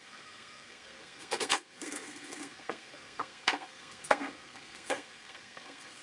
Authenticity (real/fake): fake